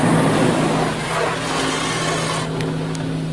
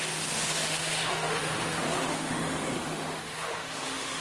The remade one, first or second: second